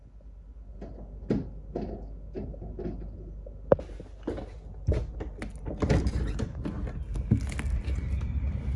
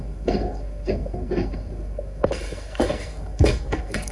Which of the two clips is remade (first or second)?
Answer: second